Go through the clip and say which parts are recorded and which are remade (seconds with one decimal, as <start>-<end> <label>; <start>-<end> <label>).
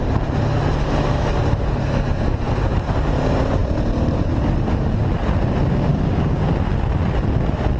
0.0-5.9 recorded; 5.9-6.4 remade; 6.4-7.8 recorded